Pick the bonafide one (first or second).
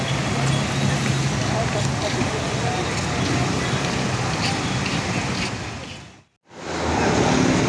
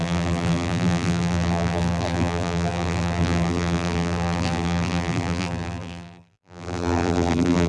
first